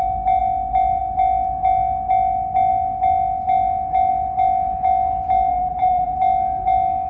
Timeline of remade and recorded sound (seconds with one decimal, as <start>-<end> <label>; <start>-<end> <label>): 0.0-5.5 recorded; 5.5-6.2 remade; 6.2-7.1 recorded